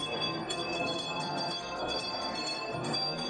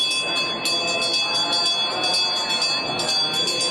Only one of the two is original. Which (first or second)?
second